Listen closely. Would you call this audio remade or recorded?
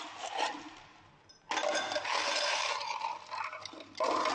recorded